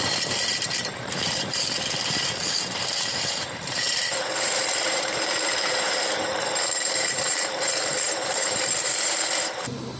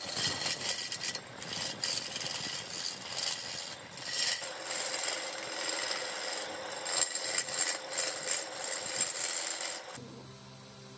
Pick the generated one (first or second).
first